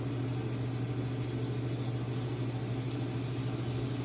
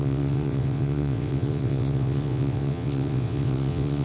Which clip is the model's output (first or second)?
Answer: second